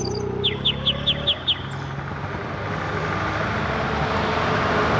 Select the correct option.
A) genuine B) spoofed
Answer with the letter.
A